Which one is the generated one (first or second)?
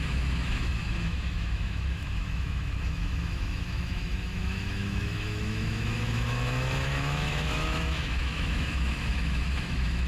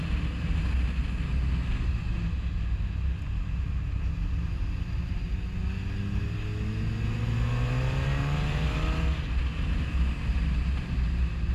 first